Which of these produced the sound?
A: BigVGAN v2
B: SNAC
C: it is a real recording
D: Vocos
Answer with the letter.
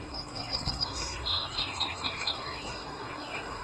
B